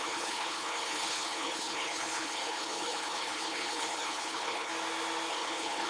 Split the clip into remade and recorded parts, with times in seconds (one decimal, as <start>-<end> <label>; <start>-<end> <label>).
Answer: 0.0-4.7 remade; 4.7-5.3 recorded; 5.3-5.9 remade